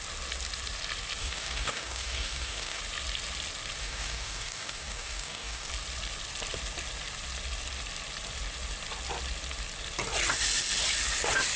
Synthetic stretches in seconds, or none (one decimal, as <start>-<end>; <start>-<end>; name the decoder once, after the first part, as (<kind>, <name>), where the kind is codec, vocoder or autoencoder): 1.2-2.8 (codec, DAC); 3.8-5.7